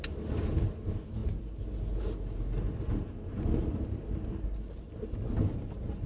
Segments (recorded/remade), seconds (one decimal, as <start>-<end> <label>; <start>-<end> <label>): 0.0-6.1 recorded